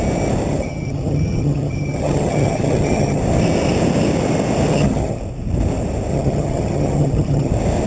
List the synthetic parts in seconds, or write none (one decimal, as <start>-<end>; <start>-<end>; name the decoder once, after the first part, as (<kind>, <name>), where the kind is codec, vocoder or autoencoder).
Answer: 0.5-3.2 (vocoder, HiFi-GAN); 4.7-5.2; 6.1-7.5